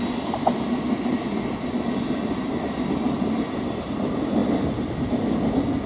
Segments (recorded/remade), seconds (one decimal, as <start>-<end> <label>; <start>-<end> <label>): 0.0-5.9 recorded